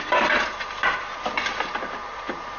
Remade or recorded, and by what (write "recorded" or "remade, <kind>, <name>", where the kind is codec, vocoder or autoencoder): remade, vocoder, BigVGAN v2